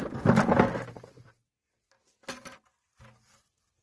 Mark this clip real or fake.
real